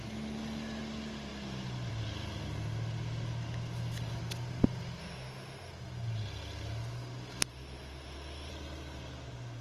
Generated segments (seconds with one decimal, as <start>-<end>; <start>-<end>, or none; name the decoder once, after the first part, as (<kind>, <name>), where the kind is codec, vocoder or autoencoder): 5.0-5.7 (autoencoder, DAC-VAE); 7.5-8.5